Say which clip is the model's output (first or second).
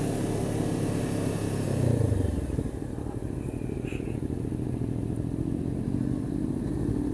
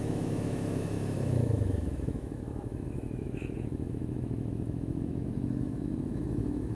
second